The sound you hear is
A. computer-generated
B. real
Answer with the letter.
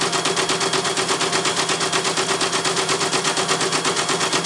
B